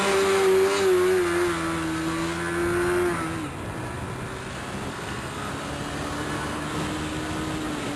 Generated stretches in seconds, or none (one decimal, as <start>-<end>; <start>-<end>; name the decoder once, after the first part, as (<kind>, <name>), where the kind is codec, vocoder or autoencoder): 4.9-5.5 (codec, SNAC)